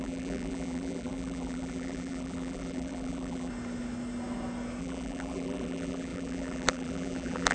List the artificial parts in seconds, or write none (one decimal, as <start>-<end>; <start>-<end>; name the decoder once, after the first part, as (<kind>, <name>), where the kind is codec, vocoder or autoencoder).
0.0-3.5 (vocoder, BigVGAN v2); 4.8-7.5